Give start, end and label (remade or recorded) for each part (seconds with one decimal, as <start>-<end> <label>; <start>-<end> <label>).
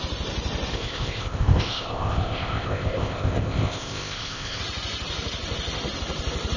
0.0-0.7 recorded; 0.7-4.6 remade; 4.6-6.6 recorded